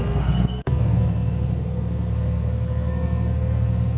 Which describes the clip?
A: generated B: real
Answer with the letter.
A